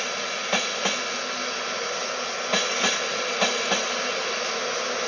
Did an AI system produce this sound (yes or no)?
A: no